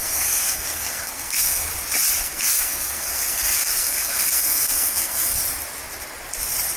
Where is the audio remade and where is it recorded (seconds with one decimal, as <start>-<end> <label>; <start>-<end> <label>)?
0.0-1.7 remade; 1.7-2.2 recorded; 2.2-5.4 remade; 5.4-6.8 recorded

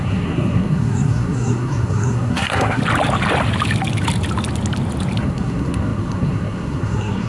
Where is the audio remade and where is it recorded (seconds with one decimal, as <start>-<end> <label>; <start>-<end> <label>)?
0.0-2.8 remade; 2.8-5.2 recorded; 5.2-7.3 remade

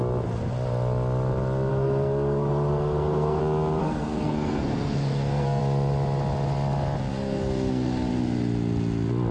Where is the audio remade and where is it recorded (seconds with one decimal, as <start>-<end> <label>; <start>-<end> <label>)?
0.0-1.7 recorded; 1.7-3.4 remade; 3.4-3.8 recorded; 3.8-5.6 remade; 5.6-7.1 recorded; 7.1-8.1 remade; 8.1-9.3 recorded

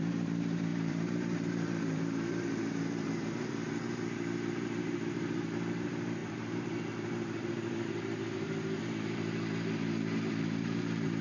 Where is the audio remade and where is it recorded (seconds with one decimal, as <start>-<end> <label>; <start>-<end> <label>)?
0.0-11.2 remade

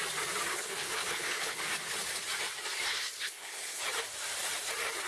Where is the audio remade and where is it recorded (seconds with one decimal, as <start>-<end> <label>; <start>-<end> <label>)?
0.0-0.5 recorded; 0.5-1.6 remade; 1.6-2.9 recorded; 2.9-3.8 remade; 3.8-5.1 recorded

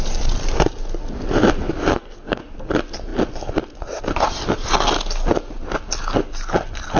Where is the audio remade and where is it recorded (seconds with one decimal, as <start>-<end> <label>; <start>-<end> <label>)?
0.0-1.9 recorded; 1.9-2.4 remade; 2.4-7.0 recorded